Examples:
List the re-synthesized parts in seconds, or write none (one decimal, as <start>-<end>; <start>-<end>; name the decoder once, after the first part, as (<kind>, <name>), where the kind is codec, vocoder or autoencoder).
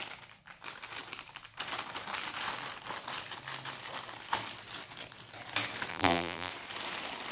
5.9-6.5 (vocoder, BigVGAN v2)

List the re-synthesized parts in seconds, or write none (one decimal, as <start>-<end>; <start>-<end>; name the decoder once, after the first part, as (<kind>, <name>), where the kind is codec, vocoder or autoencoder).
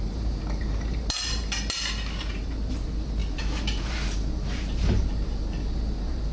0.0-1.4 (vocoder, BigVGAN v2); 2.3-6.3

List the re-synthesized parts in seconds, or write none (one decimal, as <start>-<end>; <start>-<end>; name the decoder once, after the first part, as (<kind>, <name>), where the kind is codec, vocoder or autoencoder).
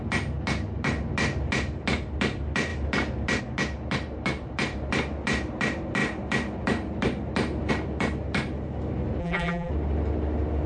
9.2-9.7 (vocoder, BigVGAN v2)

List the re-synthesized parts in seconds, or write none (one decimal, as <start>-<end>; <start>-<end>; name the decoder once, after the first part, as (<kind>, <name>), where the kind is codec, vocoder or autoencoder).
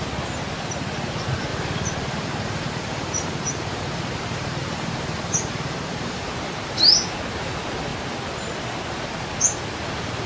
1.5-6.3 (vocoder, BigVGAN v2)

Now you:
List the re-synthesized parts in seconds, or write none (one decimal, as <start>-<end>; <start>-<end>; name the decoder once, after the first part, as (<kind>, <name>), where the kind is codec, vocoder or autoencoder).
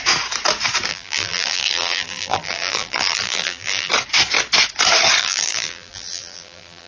0.9-3.9 (vocoder, BigVGAN v2); 5.2-6.9